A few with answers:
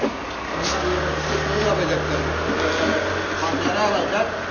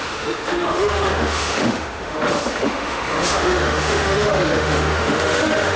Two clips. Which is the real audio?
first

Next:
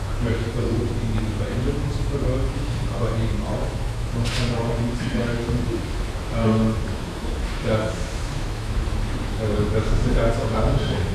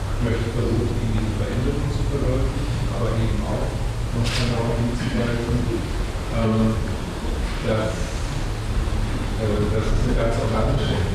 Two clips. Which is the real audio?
second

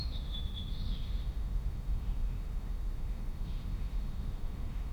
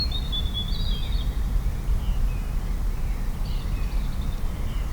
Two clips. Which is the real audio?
second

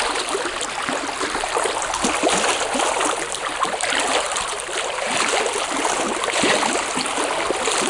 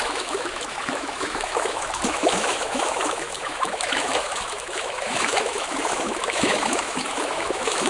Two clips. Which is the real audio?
first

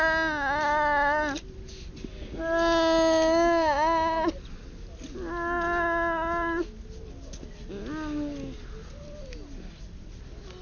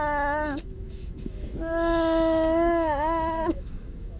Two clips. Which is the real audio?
first